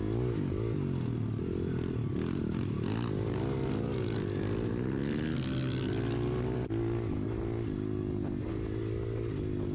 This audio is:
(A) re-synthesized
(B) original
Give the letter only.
B